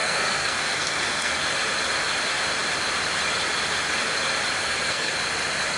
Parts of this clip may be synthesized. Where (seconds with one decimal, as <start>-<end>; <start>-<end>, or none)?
0.0-1.4; 4.6-5.1